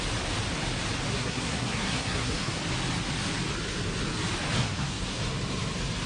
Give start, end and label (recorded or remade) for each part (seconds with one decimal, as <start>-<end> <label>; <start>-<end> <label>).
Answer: 0.0-1.1 recorded; 1.1-2.6 remade; 2.6-4.6 recorded; 4.6-5.2 remade; 5.2-6.1 recorded